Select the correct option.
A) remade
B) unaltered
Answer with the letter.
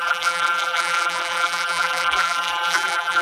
A